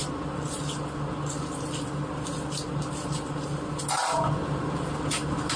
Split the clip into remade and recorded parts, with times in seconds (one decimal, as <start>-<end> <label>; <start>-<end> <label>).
0.0-5.6 recorded